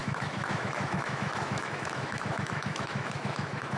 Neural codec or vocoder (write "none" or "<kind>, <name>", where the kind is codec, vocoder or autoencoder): autoencoder, DAC-VAE